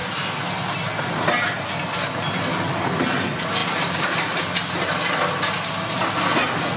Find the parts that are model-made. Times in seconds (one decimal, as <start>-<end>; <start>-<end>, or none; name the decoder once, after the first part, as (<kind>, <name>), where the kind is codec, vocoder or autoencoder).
none